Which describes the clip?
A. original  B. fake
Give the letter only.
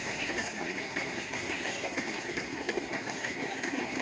B